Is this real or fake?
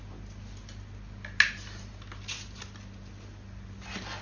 real